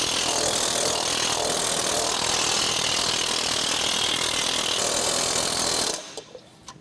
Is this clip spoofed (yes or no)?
no